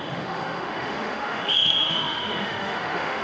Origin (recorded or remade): remade